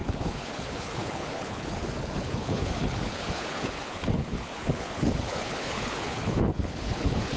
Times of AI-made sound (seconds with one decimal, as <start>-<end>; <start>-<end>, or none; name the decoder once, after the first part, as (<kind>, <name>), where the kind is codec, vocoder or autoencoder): 0.0-7.4 (codec, HILCodec)